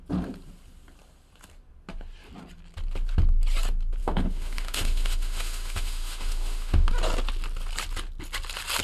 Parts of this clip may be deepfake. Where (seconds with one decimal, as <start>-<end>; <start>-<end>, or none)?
4.0-6.9